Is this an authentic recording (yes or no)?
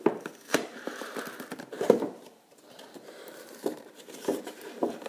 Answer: no